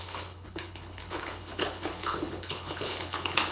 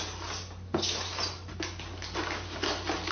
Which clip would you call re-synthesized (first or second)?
first